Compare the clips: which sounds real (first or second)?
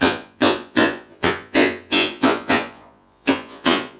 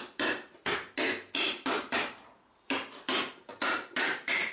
second